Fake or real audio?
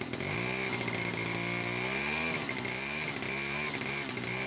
real